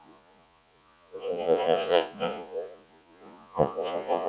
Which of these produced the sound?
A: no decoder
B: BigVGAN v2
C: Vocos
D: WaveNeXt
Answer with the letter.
C